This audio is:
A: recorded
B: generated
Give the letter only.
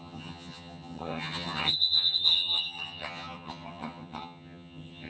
B